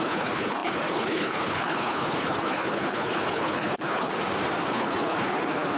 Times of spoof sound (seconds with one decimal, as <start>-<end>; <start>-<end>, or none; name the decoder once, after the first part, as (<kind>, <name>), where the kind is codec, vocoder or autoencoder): 0.0-4.1 (codec, HILCodec); 4.7-5.8